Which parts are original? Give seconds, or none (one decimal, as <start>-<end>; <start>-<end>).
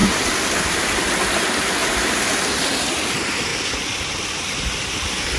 0.0-1.2; 1.8-2.6; 3.5-4.1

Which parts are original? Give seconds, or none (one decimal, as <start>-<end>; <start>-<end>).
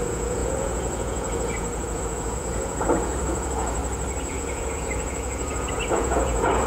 3.8-4.3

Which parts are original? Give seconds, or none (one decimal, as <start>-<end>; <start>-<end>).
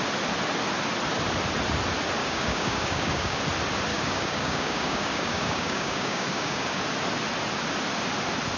0.0-2.2; 3.4-3.9; 6.8-8.6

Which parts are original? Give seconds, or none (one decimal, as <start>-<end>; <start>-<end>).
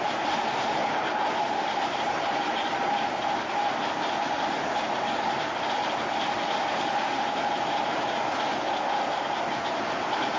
0.0-10.4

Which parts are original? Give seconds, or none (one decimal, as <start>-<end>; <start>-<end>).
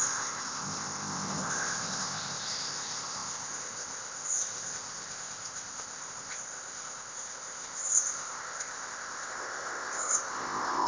none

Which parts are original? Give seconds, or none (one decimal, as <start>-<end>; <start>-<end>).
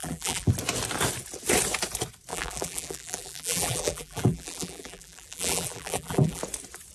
0.5-2.3; 6.4-6.9